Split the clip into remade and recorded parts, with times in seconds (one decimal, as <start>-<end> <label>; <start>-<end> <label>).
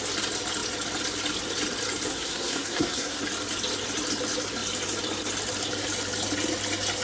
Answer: 0.0-2.1 recorded; 2.1-3.2 remade; 3.2-7.0 recorded